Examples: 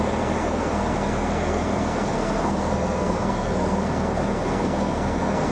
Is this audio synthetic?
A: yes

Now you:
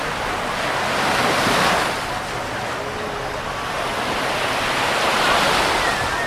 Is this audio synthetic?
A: no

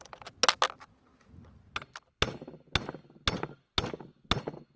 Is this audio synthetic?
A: no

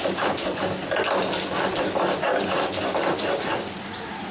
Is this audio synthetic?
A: no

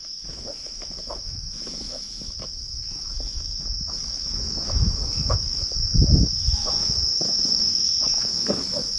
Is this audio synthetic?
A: yes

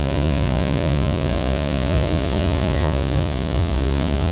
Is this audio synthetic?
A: yes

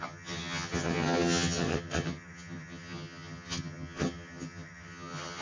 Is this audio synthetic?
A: yes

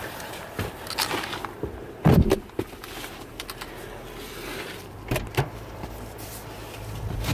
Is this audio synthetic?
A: no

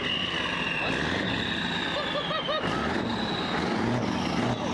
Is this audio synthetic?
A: no